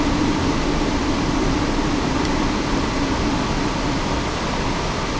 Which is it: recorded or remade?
recorded